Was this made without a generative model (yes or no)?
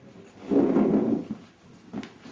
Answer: yes